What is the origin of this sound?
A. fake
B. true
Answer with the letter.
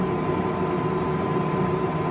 B